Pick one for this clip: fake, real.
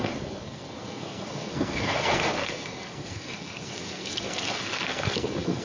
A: fake